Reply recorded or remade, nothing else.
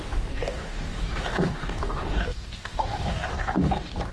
remade